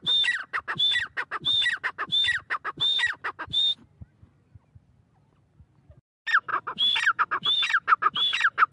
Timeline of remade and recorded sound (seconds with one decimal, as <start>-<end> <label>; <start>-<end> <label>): 0.0-8.7 recorded